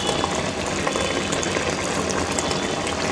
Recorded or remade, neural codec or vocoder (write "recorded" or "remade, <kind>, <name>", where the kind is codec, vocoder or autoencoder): recorded